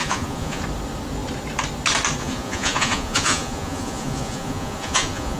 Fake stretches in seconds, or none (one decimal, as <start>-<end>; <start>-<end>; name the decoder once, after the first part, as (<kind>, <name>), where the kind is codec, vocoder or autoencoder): 0.0-0.6 (vocoder, Vocos); 2.2-5.4